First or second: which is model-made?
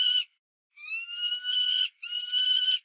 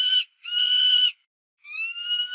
first